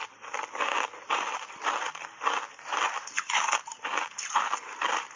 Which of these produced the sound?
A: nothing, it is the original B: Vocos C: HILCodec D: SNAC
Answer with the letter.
A